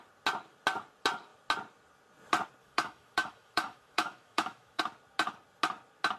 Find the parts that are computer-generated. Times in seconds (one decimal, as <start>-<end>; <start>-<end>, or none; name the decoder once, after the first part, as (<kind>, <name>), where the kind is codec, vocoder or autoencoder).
2.6-4.8 (autoencoder, DAC-VAE)